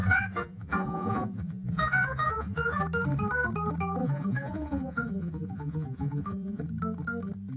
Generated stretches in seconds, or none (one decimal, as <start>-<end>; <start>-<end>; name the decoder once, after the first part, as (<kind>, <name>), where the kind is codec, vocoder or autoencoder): 0.0-2.8 (vocoder, Vocos); 4.0-6.6